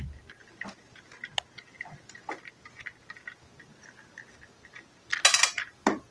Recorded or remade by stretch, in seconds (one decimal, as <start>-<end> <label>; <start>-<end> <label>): 0.0-6.1 recorded